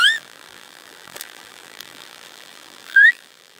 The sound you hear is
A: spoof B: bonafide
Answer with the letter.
A